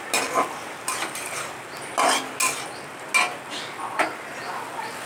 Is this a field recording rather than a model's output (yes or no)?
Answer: yes